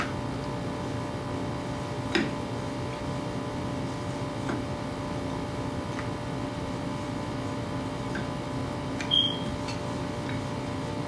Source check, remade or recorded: recorded